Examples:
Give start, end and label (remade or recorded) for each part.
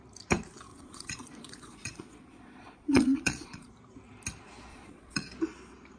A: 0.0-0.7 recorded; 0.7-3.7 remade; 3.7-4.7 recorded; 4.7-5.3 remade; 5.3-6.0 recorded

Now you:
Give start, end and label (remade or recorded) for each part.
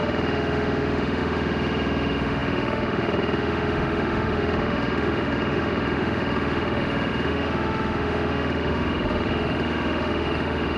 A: 0.0-10.8 remade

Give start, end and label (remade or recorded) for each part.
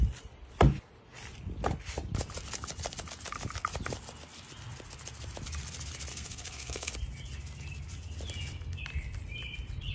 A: 0.0-6.1 recorded; 6.1-6.9 remade; 6.9-9.9 recorded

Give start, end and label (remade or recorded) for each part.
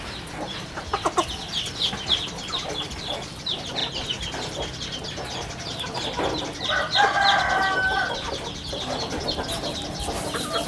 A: 0.0-10.7 recorded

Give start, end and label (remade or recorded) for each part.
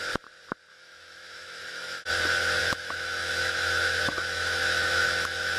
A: 0.0-0.7 recorded; 0.7-2.1 remade; 2.1-2.6 recorded; 2.6-5.6 remade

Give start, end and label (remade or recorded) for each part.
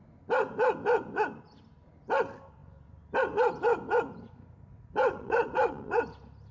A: 0.0-4.7 recorded; 4.7-6.0 remade; 6.0-6.5 recorded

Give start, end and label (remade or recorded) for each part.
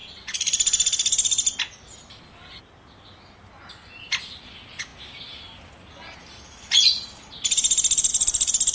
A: 0.0-8.7 recorded